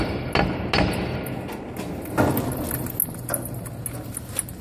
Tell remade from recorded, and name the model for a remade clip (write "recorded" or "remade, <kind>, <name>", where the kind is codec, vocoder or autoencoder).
recorded